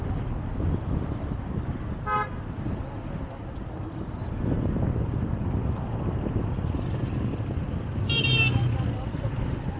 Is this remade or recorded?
recorded